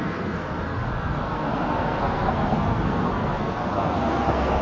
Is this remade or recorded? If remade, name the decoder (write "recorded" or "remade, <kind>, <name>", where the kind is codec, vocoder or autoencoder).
remade, codec, SNAC